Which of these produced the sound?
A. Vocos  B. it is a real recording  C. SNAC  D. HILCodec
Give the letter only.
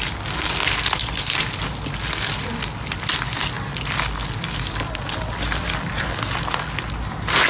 B